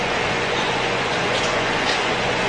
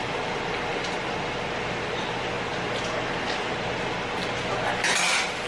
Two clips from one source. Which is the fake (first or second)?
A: first